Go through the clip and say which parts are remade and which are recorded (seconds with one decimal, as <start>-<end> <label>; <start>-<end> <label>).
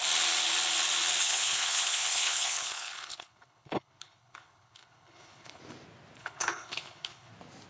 0.0-1.2 recorded; 1.2-5.6 remade; 5.6-6.2 recorded; 6.2-7.3 remade; 7.3-7.7 recorded